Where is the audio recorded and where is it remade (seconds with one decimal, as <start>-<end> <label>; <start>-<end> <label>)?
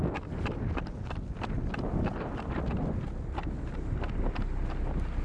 0.0-5.2 recorded